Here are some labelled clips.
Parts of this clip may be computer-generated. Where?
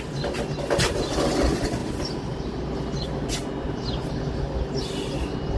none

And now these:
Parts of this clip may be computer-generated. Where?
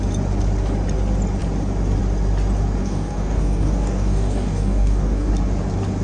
2.8-5.3 (codec, DAC)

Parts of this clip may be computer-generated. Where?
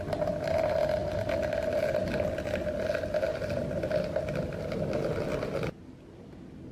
3.3-4.7 (vocoder, BigVGAN v2)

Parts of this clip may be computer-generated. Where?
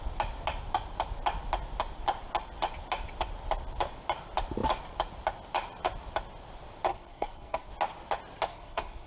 6.9-7.7 (codec, SNAC); 8.5-9.1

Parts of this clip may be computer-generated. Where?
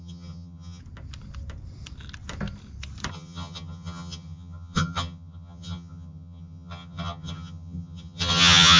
0.0-0.8 (vocoder, HiFi-GAN); 3.1-8.8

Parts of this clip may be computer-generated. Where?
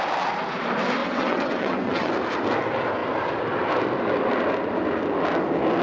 1.0-2.1 (vocoder, WaveNeXt)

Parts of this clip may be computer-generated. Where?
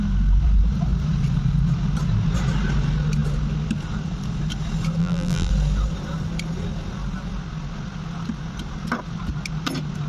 5.0-5.5 (vocoder, BigVGAN v2)